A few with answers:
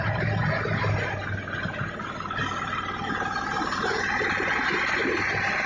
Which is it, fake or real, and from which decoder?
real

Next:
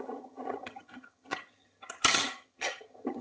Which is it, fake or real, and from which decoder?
fake, vocoder, HiFi-GAN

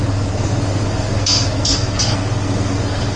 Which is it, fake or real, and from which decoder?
fake, codec, SNAC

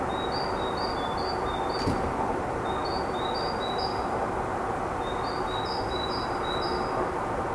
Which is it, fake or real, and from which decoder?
real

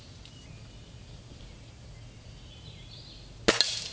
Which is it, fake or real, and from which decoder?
real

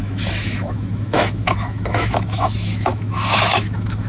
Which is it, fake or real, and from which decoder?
fake, autoencoder, DAC-VAE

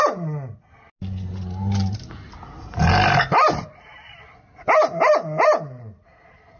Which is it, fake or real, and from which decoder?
real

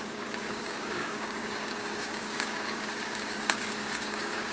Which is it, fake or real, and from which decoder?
fake, codec, DAC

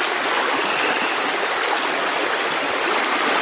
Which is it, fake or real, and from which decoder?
real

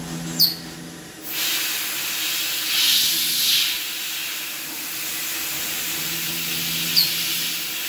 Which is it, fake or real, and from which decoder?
real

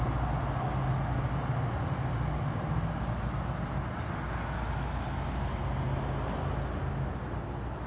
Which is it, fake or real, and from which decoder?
real